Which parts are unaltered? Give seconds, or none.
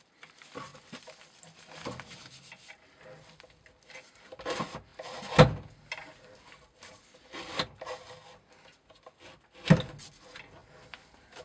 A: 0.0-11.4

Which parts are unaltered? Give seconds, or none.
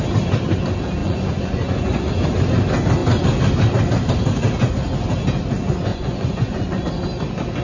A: 0.0-1.0; 2.1-5.9; 6.8-7.6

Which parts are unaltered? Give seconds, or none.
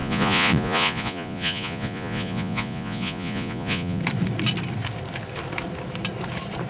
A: 4.0-6.7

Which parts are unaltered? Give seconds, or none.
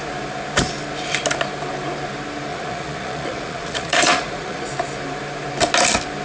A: 0.0-2.5; 4.6-6.2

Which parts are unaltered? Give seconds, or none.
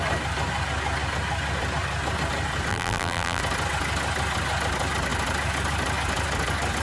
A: 0.0-2.7; 3.4-6.8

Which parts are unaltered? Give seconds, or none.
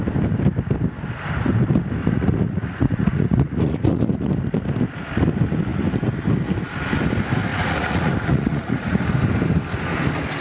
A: 0.0-2.0; 4.3-7.5; 9.0-10.4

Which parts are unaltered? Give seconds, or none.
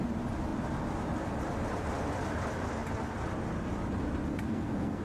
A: 0.0-4.3